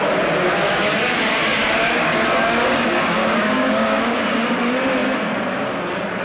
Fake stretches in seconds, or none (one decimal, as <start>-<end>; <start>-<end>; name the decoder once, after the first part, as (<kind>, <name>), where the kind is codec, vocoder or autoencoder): 0.7-4.4 (codec, DAC)